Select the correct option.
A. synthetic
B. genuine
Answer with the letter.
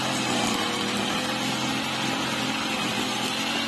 B